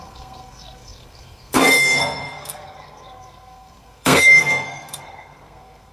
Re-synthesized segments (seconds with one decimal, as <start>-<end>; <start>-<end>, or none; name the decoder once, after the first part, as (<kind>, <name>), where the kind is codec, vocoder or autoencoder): 0.0-5.9 (codec, SNAC)